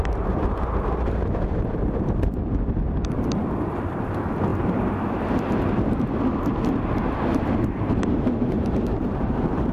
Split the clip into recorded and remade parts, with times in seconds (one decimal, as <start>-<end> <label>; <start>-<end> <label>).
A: 0.0-3.4 recorded; 3.4-4.1 remade; 4.1-7.3 recorded; 7.3-9.7 remade